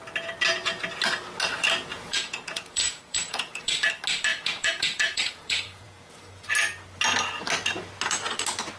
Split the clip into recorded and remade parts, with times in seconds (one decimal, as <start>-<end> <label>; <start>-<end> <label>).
0.0-1.9 recorded; 1.9-3.9 remade; 3.9-4.3 recorded; 4.3-6.1 remade; 6.1-8.8 recorded